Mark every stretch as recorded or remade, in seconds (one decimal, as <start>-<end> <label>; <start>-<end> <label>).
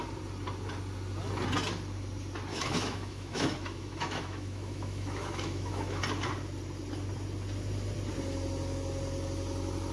0.0-2.5 recorded; 2.5-6.0 remade; 6.0-9.9 recorded